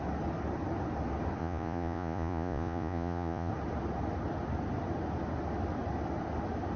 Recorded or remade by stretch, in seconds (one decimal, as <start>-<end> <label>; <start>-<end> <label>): 0.0-1.4 recorded; 1.4-3.5 remade; 3.5-6.8 recorded

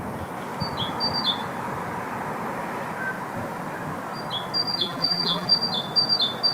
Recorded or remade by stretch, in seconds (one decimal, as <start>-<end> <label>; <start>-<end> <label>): 0.0-4.7 recorded; 4.7-5.5 remade; 5.5-6.5 recorded